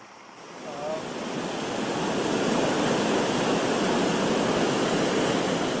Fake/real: real